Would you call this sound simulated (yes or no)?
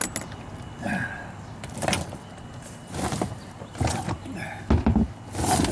no